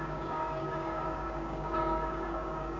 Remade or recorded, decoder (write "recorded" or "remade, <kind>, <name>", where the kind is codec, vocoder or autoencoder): remade, codec, DAC